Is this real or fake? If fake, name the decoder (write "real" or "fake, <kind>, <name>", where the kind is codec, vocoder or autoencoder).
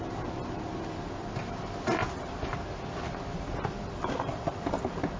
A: real